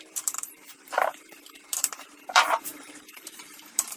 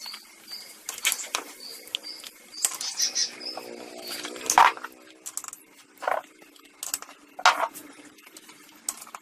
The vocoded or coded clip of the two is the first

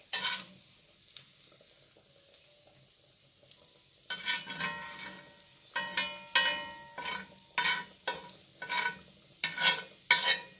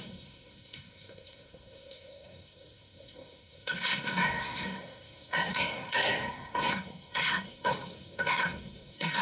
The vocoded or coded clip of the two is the second